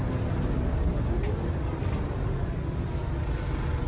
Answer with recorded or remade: recorded